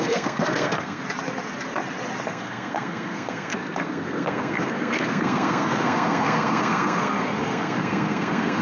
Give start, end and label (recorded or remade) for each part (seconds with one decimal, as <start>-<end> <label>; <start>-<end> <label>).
0.0-1.0 remade; 1.0-2.3 recorded; 2.3-8.6 remade